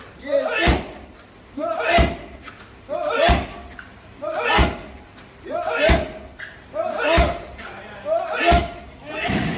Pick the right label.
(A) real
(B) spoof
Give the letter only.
A